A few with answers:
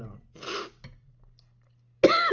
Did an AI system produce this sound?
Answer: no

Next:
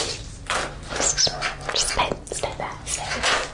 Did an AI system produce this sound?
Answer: no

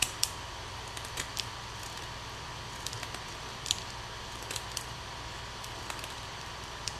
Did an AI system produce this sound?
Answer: yes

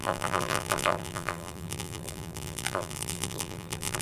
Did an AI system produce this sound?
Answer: yes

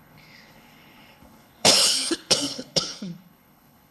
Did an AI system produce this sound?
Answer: yes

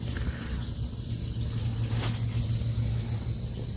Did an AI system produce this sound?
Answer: no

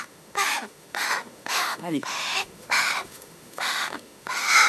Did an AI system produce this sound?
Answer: yes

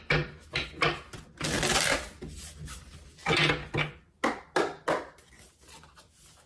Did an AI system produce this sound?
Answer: no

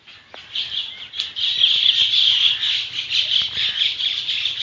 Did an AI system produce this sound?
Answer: no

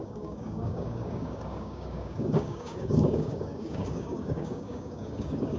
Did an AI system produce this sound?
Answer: yes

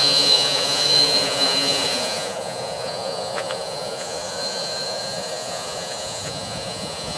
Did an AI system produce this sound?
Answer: yes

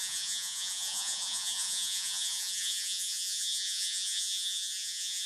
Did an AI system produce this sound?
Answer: yes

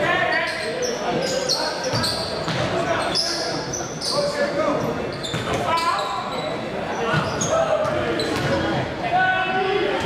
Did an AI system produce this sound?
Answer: no